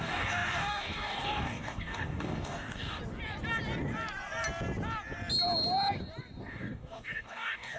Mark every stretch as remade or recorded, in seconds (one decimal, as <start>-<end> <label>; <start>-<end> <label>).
0.0-3.0 remade; 3.0-6.4 recorded; 6.4-7.8 remade